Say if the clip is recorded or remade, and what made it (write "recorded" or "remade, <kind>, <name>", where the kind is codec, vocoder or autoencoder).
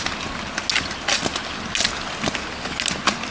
recorded